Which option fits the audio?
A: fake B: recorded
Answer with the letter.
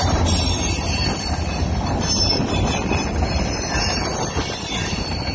B